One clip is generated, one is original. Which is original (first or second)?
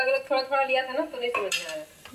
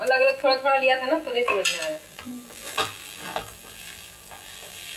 first